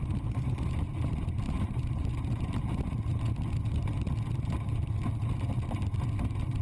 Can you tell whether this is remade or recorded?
recorded